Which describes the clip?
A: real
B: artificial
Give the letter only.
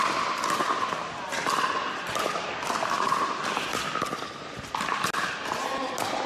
A